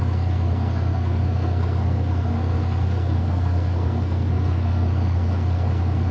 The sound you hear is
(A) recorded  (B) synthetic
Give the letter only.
B